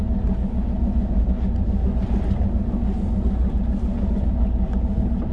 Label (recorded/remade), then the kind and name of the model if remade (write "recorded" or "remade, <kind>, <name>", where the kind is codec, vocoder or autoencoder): recorded